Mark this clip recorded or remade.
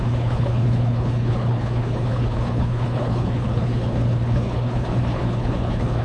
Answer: remade